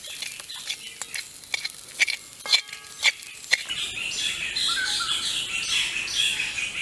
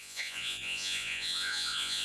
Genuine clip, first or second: first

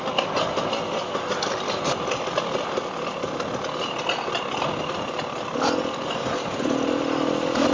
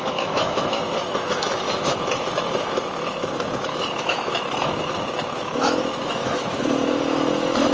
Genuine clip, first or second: first